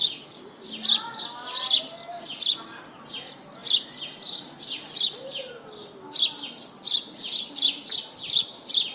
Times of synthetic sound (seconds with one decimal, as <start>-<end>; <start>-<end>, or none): none